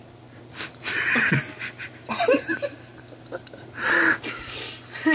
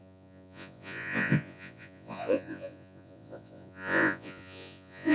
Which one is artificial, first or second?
second